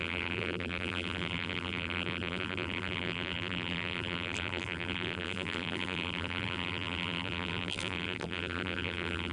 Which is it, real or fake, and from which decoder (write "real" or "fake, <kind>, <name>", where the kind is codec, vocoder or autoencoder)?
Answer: fake, vocoder, BigVGAN v2